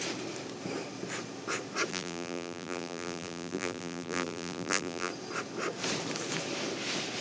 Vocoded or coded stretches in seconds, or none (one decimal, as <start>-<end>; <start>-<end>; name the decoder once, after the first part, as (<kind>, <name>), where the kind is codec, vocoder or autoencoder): 1.9-5.1 (vocoder, BigVGAN v2)